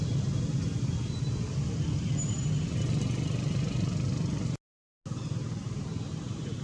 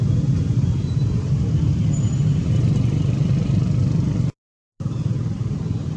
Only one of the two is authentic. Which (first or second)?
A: first